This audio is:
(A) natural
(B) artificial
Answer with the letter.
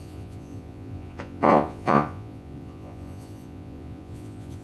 B